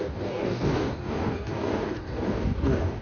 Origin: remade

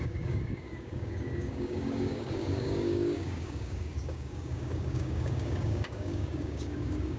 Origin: remade